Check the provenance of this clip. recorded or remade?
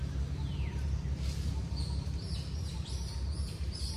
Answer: recorded